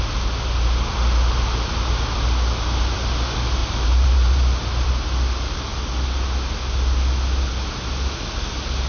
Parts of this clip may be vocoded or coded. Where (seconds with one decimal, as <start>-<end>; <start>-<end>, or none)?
3.6-4.9

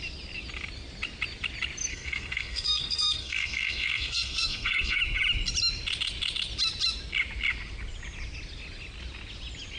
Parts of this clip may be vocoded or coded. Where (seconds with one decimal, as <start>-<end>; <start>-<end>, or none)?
1.9-5.0

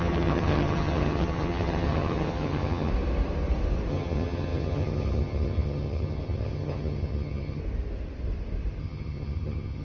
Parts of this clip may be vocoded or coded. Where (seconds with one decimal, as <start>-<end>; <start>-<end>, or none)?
0.0-2.9; 3.9-7.6; 8.8-9.8

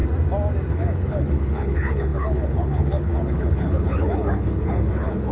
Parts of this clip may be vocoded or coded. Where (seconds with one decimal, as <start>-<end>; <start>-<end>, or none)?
0.7-5.3

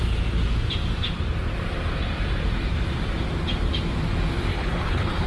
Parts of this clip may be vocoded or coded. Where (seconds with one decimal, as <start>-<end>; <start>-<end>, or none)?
4.5-5.3